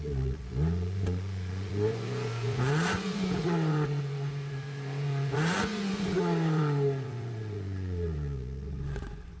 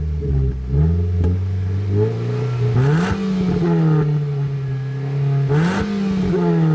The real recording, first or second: second